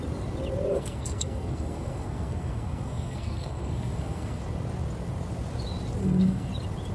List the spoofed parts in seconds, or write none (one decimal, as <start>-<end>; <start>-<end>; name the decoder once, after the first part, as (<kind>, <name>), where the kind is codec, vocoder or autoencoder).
0.7-4.4 (codec, SNAC); 6.0-6.5